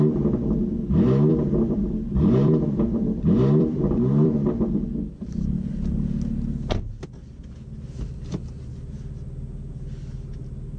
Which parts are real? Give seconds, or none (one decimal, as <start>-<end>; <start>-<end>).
0.0-1.3; 5.7-10.8